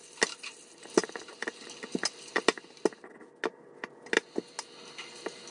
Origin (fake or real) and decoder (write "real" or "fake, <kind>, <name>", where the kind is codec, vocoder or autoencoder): real